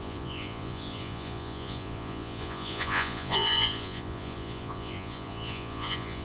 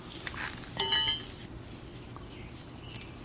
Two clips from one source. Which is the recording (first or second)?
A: second